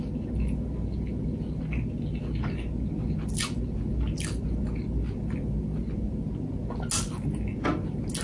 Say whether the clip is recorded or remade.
recorded